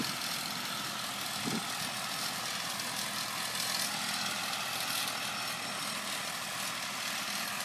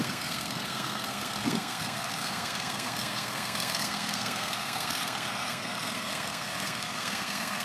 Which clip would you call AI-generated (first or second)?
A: second